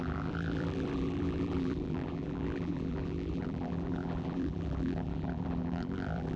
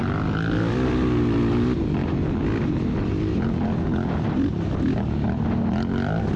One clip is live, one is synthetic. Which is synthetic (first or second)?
first